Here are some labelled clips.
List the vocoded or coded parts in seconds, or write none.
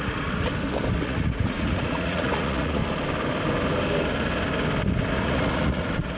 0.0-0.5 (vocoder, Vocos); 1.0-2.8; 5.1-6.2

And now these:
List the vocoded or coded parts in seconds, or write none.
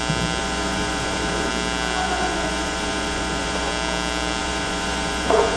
0.4-1.5 (vocoder, Vocos); 2.0-3.7; 4.4-5.6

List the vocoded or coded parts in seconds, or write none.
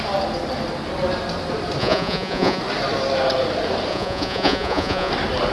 1.8-2.6 (vocoder, Vocos); 3.9-5.1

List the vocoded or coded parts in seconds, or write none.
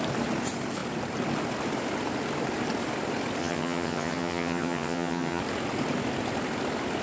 3.4-5.4 (vocoder, HiFi-GAN)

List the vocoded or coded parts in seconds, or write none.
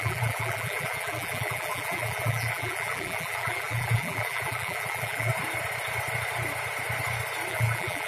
0.0-5.3 (vocoder, BigVGAN v2); 7.5-8.1